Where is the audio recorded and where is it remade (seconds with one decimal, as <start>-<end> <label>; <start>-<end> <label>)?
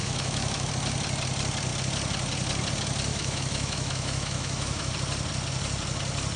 0.0-0.7 remade; 0.7-3.1 recorded; 3.1-4.9 remade; 4.9-6.4 recorded